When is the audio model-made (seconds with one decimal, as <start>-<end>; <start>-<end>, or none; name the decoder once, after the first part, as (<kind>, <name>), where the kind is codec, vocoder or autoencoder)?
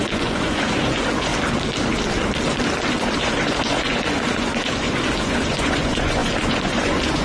0.0-1.3 (vocoder, Vocos); 2.9-7.2